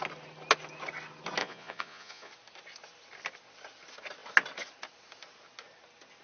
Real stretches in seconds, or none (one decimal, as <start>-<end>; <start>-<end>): 0.0-1.4; 2.3-6.2